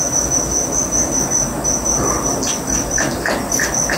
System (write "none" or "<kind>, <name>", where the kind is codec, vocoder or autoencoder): none